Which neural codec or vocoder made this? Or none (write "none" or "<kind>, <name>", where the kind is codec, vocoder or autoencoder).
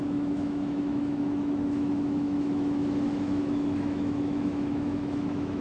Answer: autoencoder, DAC-VAE